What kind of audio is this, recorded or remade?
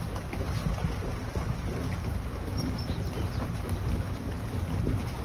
recorded